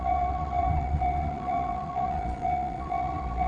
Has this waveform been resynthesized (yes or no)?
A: yes